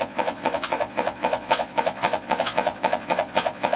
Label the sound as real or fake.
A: fake